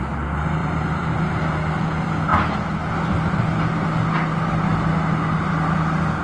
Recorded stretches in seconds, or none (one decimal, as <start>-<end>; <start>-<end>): 0.0-0.6; 1.4-6.2